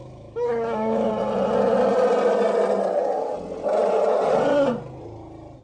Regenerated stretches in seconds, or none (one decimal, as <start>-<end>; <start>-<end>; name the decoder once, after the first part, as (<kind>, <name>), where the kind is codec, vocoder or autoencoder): 0.0-1.1 (autoencoder, DAC-VAE)